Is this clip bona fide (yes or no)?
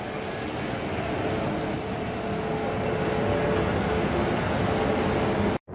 yes